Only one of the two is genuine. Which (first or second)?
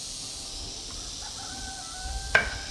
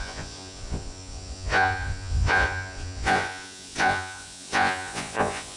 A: first